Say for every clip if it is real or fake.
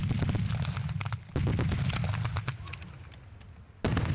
real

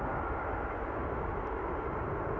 real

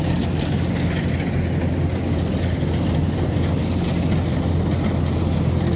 real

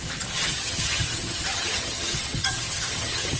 fake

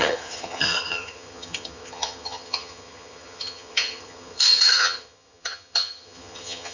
fake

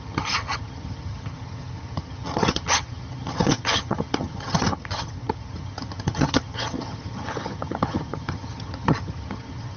fake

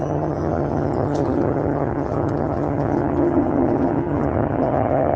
fake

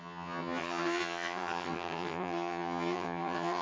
fake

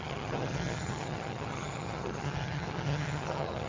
fake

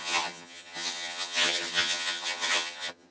fake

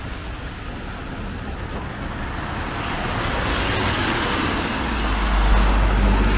real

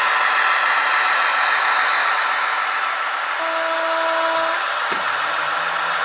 real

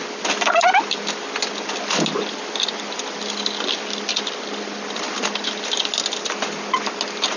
real